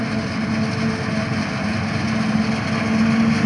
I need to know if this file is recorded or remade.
recorded